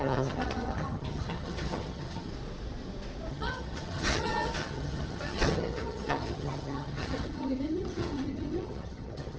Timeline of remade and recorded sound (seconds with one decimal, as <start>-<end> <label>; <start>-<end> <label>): 0.0-2.3 remade; 2.3-3.3 recorded; 3.3-9.4 remade